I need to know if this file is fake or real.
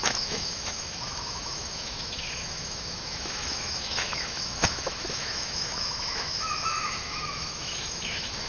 fake